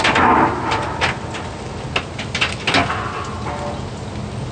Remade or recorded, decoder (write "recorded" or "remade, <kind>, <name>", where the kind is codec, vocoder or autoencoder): recorded